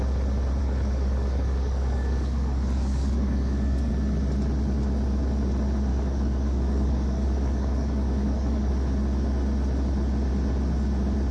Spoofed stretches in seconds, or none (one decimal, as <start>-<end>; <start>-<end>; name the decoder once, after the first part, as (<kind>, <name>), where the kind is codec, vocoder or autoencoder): 0.6-3.9 (codec, DAC); 5.9-8.7